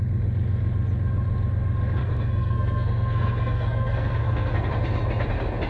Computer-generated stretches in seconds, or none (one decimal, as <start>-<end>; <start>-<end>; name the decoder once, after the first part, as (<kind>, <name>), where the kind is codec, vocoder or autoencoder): 2.0-4.7 (codec, SNAC)